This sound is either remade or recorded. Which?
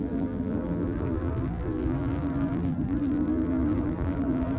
remade